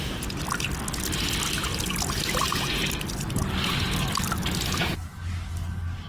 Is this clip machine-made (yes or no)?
no